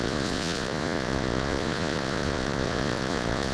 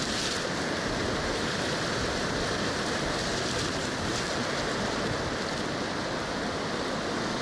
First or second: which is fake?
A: first